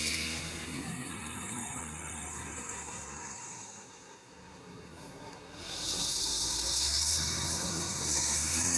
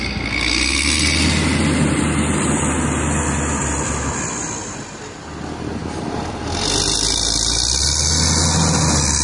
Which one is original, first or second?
second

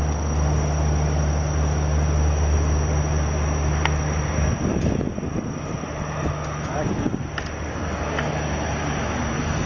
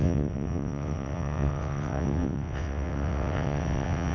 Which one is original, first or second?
first